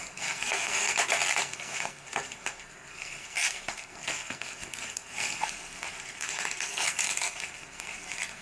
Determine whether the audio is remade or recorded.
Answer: remade